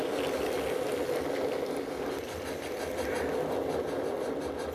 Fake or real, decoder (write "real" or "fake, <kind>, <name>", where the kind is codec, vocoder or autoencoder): real